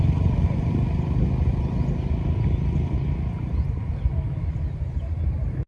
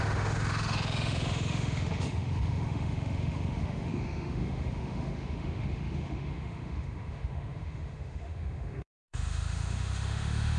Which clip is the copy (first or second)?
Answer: second